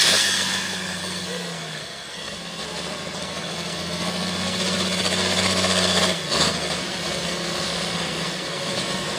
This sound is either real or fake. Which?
fake